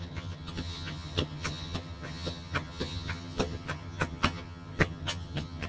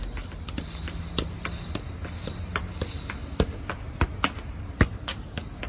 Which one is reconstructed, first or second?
first